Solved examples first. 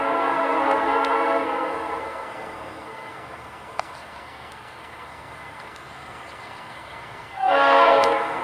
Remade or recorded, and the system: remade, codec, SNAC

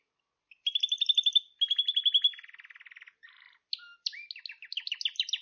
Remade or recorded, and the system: recorded